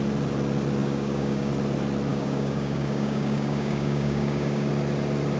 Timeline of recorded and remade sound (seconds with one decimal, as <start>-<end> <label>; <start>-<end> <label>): 0.0-0.8 recorded; 0.8-1.5 remade; 1.5-2.1 recorded; 2.1-4.7 remade; 4.7-5.4 recorded